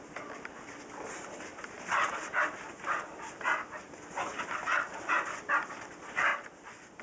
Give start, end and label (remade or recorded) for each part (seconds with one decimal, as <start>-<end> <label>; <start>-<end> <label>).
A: 0.0-7.0 recorded